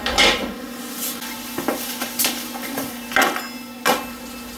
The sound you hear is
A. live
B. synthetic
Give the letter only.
A